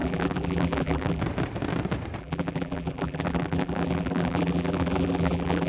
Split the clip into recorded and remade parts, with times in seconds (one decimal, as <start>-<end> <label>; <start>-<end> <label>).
0.0-1.2 remade; 1.2-2.2 recorded; 2.2-5.7 remade